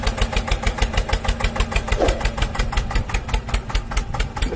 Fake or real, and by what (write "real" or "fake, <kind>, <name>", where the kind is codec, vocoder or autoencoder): real